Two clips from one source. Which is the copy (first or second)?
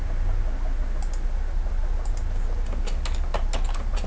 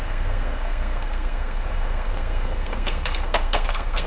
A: second